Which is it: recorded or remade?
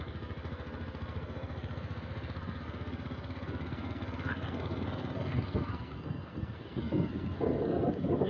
remade